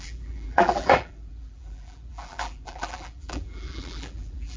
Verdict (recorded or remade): remade